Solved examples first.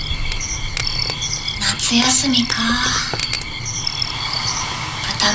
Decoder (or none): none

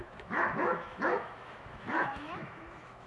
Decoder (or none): autoencoder, DAC-VAE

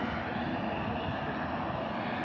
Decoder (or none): none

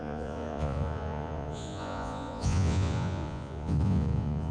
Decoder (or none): vocoder, Vocos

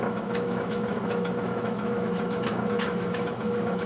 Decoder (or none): autoencoder, DAC-VAE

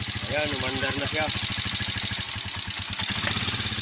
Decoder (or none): none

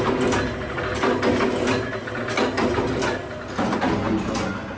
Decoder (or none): none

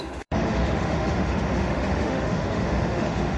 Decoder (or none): autoencoder, DAC-VAE